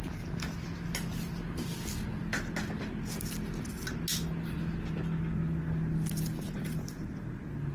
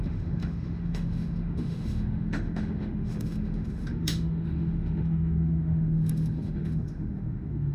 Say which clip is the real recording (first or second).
first